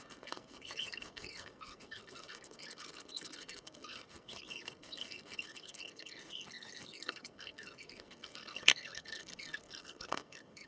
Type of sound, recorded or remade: remade